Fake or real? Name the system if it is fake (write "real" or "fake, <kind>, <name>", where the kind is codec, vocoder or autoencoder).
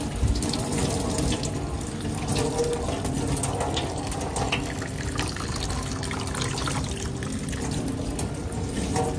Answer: real